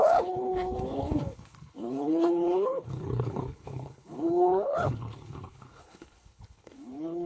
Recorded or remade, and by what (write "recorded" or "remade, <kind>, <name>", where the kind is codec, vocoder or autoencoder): remade, codec, HILCodec